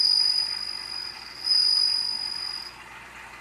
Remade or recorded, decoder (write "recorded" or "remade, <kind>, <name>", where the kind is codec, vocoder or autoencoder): recorded